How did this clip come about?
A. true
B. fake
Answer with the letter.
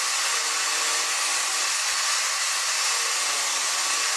A